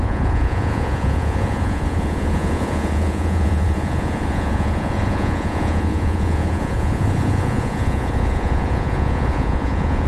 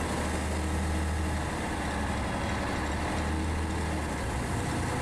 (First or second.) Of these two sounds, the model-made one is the first